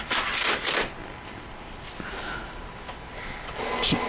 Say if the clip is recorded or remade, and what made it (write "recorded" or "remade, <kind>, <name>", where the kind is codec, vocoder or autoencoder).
recorded